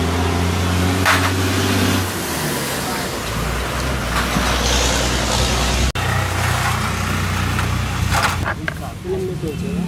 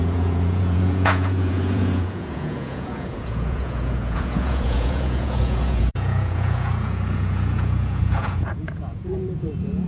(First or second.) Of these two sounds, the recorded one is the first